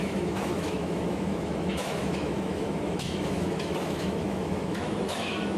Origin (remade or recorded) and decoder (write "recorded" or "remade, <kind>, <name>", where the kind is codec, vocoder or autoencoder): remade, autoencoder, DAC-VAE